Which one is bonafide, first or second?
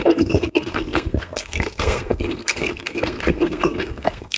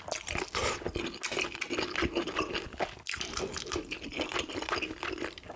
second